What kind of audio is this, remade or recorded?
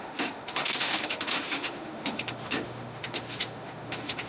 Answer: remade